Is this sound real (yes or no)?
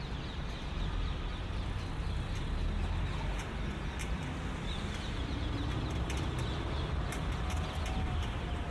yes